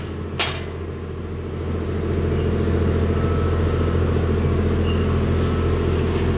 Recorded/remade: recorded